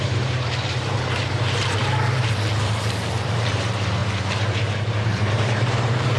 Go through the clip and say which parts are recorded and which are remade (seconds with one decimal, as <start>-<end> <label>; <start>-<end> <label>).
0.0-6.2 remade